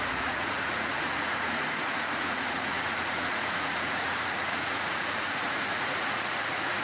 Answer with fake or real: fake